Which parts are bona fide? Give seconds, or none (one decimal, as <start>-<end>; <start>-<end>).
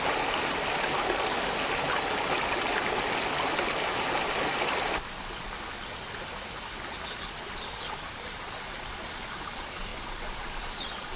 0.0-11.2